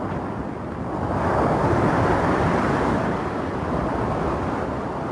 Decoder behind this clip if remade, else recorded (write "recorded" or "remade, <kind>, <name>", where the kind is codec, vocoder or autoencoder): recorded